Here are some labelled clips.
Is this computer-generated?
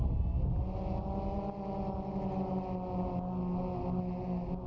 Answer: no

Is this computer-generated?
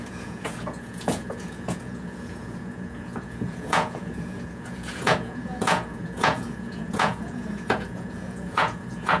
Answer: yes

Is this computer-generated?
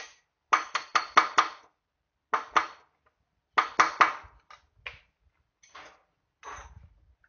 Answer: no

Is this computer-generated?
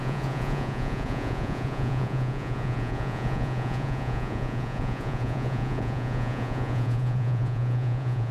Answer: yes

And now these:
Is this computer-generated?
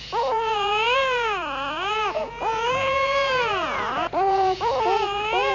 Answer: yes